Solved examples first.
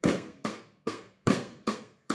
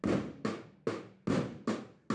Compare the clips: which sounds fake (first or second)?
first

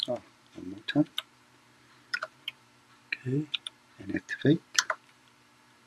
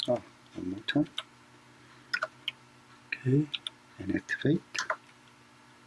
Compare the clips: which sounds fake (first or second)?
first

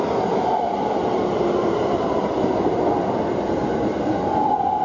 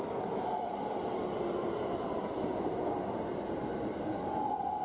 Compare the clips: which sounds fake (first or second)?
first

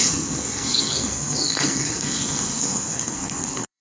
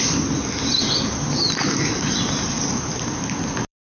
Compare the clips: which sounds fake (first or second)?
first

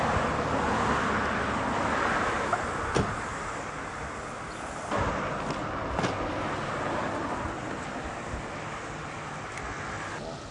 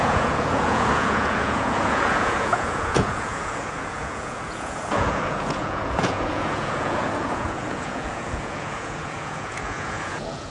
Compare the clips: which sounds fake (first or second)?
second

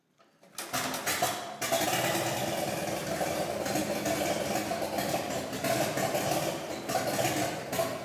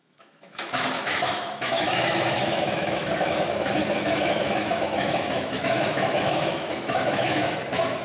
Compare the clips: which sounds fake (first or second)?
second